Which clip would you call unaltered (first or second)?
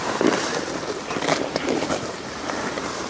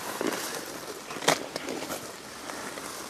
second